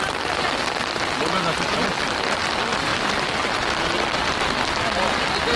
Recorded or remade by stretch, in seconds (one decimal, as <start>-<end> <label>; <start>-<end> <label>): 0.0-5.6 recorded